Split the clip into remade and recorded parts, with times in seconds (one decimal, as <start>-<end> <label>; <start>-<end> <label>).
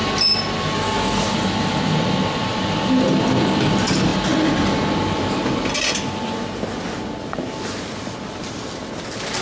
0.0-9.4 recorded